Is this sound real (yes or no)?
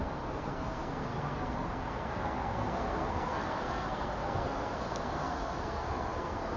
no